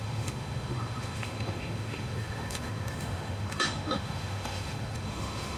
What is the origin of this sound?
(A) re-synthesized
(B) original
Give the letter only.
A